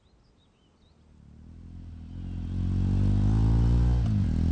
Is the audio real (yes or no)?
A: yes